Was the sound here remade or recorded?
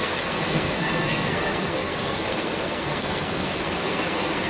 remade